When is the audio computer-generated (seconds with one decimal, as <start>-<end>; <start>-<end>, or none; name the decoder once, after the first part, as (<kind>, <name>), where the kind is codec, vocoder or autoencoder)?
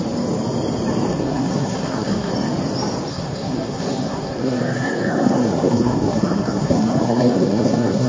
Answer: 1.1-2.3 (codec, SNAC); 3.1-8.1